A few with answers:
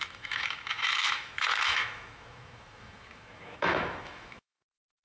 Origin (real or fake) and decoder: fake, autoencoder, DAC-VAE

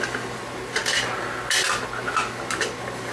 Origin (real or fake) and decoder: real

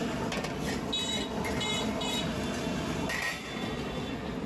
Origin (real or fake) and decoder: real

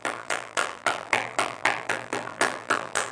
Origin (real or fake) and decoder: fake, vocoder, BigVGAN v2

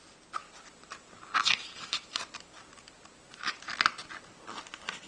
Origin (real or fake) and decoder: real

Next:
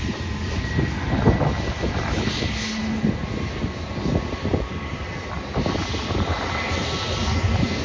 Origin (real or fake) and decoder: real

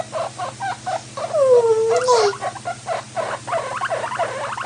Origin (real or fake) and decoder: real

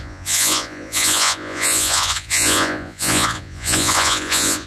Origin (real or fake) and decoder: fake, vocoder, Vocos